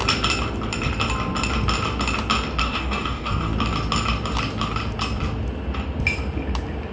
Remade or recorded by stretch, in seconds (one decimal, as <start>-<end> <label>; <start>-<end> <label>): 0.0-2.6 recorded; 2.6-3.5 remade; 3.5-6.9 recorded